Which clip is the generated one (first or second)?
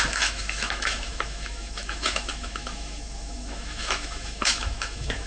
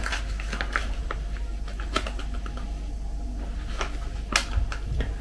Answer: first